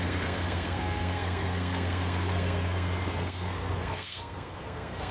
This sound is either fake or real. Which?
fake